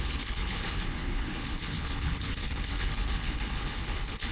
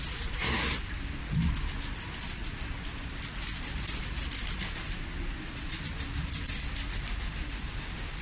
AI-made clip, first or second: first